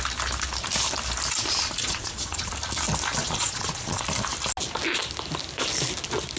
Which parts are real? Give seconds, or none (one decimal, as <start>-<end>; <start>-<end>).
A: 0.0-1.8; 2.5-3.2; 4.0-6.4